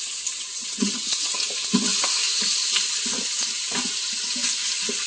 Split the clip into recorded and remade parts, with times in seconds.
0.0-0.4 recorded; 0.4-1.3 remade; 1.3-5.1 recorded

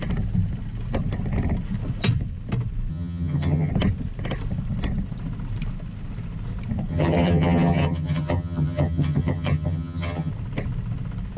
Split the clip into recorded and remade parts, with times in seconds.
0.0-2.9 recorded; 2.9-3.7 remade; 3.7-6.9 recorded; 6.9-10.3 remade; 10.3-11.4 recorded